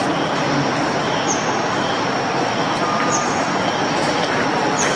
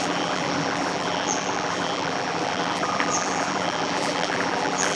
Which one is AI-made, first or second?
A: second